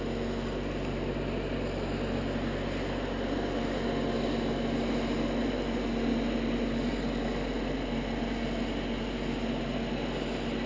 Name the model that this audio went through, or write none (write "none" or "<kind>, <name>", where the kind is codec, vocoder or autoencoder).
none